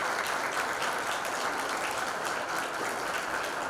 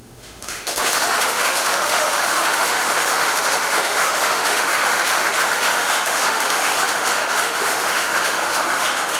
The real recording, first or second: first